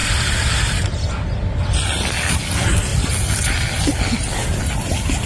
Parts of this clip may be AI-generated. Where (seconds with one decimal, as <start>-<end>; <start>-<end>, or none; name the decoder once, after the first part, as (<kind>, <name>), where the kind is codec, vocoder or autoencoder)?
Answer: none